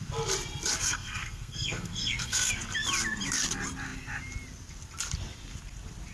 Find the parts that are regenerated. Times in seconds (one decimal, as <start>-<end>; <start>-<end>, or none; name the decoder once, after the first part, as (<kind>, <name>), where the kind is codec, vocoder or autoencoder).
0.8-2.5 (codec, SNAC)